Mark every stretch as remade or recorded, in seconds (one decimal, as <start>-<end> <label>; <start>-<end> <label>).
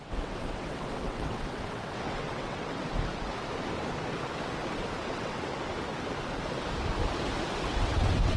0.0-2.8 remade; 2.8-5.0 recorded; 5.0-5.9 remade; 5.9-7.7 recorded; 7.7-8.4 remade